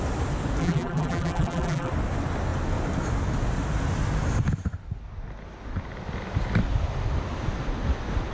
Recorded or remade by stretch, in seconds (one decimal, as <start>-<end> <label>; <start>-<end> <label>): 0.0-0.6 recorded; 0.6-1.9 remade; 1.9-8.3 recorded